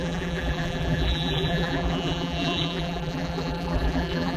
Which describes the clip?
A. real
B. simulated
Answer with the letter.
B